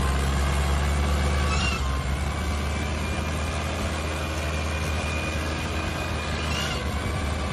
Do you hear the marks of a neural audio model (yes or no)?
no